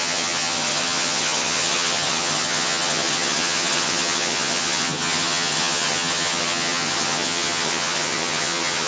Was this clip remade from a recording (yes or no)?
yes